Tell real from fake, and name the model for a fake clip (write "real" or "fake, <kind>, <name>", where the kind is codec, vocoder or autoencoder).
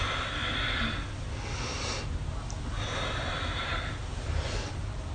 real